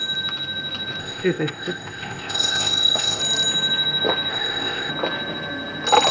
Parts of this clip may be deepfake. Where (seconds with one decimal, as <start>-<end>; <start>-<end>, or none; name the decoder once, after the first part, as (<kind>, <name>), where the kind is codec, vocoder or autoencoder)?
1.0-3.2 (codec, ZipCodec); 4.3-4.9